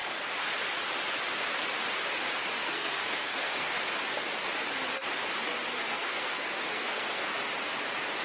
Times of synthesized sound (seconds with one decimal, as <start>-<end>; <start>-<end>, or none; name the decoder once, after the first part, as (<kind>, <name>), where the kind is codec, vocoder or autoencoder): 2.6-3.9 (codec, SNAC); 5.7-7.3